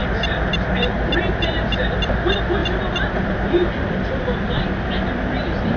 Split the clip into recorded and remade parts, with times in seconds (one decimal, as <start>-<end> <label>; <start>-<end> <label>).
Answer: 0.0-5.8 remade

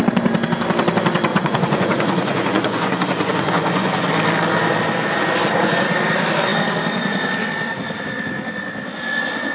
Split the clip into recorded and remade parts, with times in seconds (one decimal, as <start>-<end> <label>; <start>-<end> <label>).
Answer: 0.0-1.3 recorded; 1.3-4.1 remade; 4.1-9.5 recorded